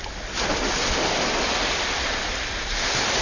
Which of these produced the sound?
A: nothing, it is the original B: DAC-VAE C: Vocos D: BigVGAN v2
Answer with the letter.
A